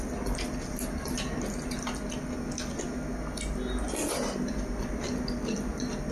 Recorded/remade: recorded